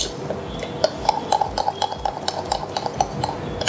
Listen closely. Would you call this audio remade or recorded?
recorded